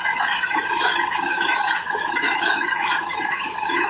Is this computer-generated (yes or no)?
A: yes